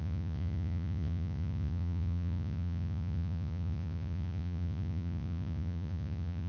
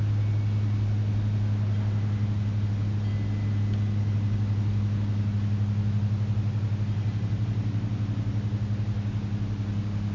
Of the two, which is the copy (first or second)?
first